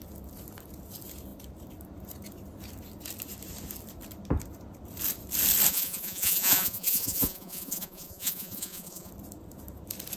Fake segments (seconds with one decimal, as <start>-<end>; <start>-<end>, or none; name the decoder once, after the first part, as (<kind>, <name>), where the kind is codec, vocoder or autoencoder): 5.7-9.1 (vocoder, Vocos)